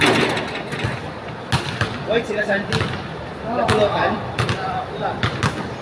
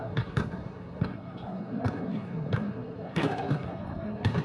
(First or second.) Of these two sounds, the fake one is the second